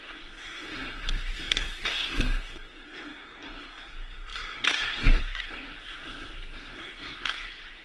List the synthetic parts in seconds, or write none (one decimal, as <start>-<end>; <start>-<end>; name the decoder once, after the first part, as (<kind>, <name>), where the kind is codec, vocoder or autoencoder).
0.0-7.8 (codec, SNAC)